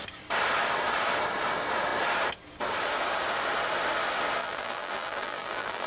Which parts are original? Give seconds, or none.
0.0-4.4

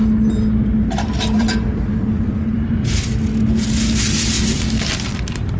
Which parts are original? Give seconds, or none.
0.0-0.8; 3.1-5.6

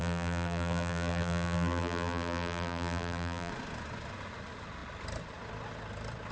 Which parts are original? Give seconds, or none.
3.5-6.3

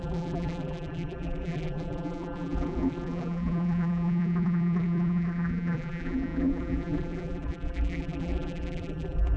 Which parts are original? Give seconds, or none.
none

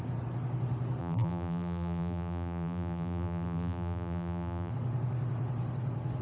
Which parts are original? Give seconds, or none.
0.0-1.0; 4.7-6.2